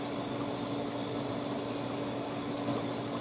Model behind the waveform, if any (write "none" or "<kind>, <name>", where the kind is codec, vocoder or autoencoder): none